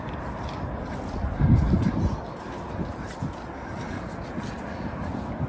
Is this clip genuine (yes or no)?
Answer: yes